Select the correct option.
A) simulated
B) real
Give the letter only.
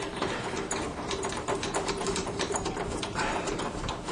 A